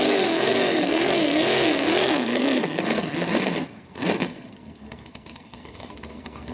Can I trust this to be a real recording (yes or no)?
no